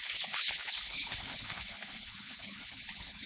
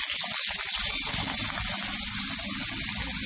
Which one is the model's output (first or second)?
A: first